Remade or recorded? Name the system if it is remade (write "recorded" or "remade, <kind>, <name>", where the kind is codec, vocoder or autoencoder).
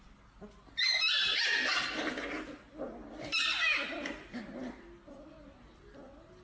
recorded